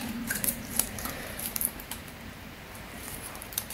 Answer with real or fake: fake